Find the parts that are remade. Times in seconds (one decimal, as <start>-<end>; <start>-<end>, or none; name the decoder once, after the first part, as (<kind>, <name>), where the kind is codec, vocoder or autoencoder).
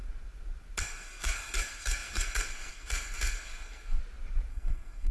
0.8-4.0 (codec, SNAC); 4.5-5.1